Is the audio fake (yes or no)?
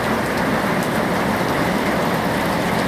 no